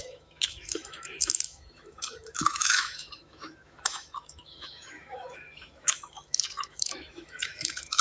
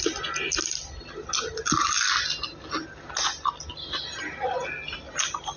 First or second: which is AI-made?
first